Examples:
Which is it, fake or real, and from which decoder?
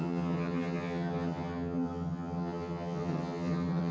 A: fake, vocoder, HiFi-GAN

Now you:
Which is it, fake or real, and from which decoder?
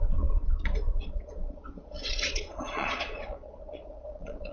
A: fake, vocoder, Vocos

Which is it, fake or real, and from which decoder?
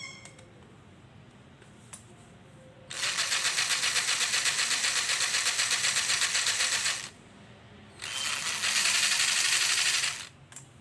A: real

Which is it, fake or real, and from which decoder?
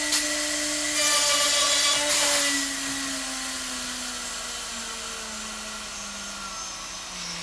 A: real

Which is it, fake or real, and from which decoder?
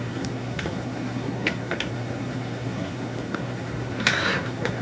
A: fake, codec, SNAC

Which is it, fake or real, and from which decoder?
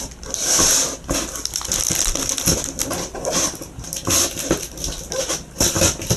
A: real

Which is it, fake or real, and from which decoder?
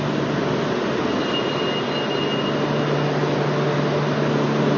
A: real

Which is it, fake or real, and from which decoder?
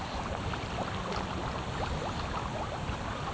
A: real